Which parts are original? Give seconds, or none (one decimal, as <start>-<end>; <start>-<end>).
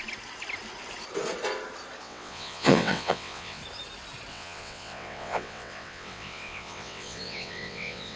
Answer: 0.0-2.0; 3.6-4.3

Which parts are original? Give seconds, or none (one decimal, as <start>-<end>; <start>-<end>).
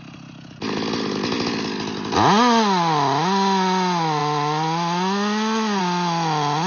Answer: 0.0-6.7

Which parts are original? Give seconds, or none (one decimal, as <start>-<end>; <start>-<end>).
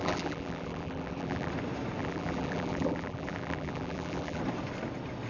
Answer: 1.5-2.0; 4.4-5.3